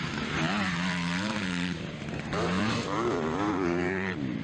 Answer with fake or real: fake